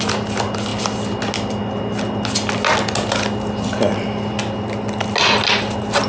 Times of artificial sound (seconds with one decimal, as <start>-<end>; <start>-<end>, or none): none